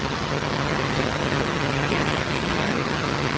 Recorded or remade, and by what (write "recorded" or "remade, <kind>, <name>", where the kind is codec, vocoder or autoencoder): remade, vocoder, HiFi-GAN